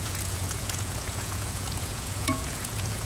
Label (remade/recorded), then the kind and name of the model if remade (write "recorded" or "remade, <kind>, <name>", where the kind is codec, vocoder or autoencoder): remade, vocoder, Vocos